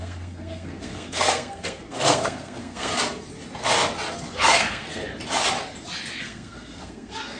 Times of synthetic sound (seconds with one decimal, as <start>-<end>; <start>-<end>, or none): 0.0-2.9; 4.3-5.0; 6.2-7.4